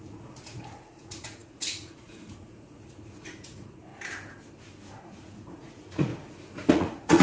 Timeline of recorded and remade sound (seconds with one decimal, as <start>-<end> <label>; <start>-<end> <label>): 0.0-3.9 remade; 3.9-5.0 recorded; 5.0-6.1 remade; 6.1-6.7 recorded; 6.7-7.2 remade